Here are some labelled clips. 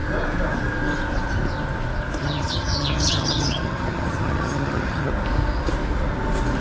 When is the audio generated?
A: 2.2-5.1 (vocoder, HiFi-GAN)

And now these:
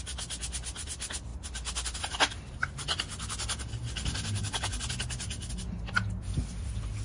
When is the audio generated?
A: none

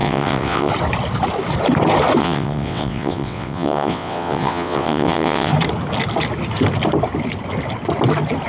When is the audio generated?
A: 0.0-0.7 (vocoder, WaveNeXt); 2.2-5.5

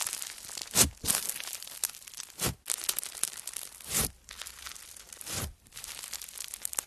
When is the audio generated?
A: none

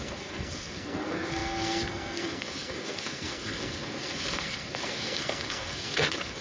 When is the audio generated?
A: 0.0-6.4 (codec, SNAC)

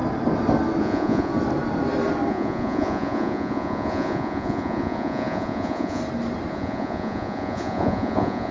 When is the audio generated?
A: 0.8-1.3 (vocoder, Vocos); 2.3-6.0; 6.5-8.5

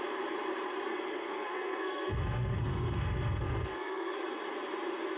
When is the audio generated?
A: 1.1-4.2 (codec, SNAC)